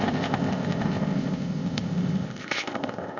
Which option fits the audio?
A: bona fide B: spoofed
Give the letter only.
B